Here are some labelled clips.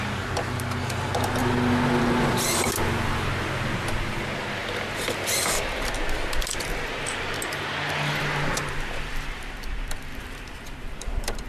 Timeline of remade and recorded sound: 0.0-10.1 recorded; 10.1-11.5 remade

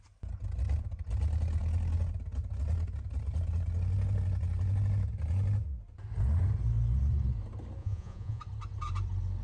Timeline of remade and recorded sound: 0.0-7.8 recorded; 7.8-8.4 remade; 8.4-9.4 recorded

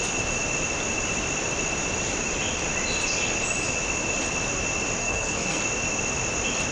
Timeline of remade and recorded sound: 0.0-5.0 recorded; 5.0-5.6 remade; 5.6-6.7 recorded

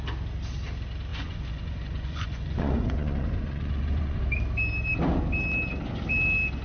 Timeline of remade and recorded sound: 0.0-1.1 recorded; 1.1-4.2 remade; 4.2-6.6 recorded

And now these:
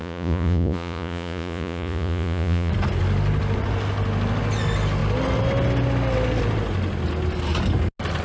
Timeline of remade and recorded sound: 0.0-2.7 remade; 2.7-8.2 recorded

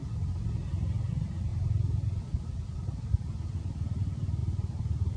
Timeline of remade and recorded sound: 0.0-1.1 remade; 1.1-4.4 recorded; 4.4-5.2 remade

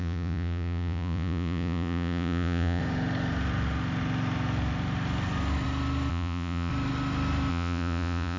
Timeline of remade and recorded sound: 0.0-2.8 remade; 2.8-6.1 recorded; 6.1-6.7 remade; 6.7-7.5 recorded; 7.5-8.4 remade

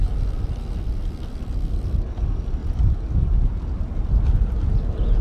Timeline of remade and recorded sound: 0.0-2.6 recorded; 2.6-3.8 remade; 3.8-5.2 recorded